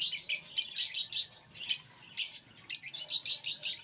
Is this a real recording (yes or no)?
yes